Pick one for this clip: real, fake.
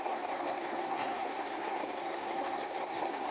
fake